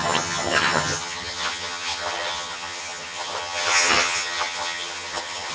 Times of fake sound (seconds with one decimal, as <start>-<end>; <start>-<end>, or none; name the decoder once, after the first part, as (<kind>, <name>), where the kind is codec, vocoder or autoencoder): 0.0-5.5 (vocoder, HiFi-GAN)